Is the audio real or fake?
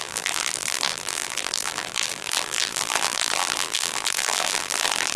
fake